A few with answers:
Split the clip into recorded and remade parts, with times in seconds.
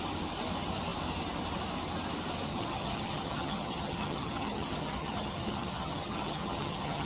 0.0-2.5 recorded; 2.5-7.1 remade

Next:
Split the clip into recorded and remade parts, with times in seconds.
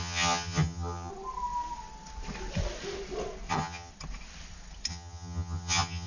0.0-1.1 remade; 1.1-3.5 recorded; 3.5-3.9 remade; 3.9-4.9 recorded; 4.9-6.1 remade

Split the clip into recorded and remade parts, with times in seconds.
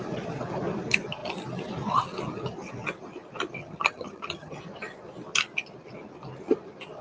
0.0-3.6 recorded; 3.6-4.6 remade; 4.6-7.0 recorded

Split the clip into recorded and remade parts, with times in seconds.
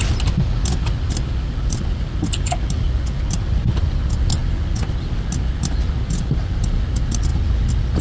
0.0-8.0 recorded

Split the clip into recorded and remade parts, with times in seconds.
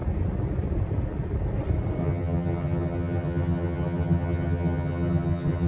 0.0-2.0 recorded; 2.0-5.7 remade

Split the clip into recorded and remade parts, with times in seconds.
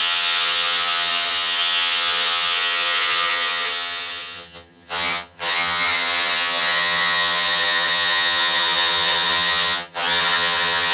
0.0-10.9 remade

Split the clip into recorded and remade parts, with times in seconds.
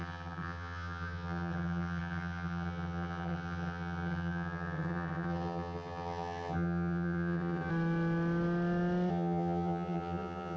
0.0-7.7 remade; 7.7-9.1 recorded; 9.1-10.6 remade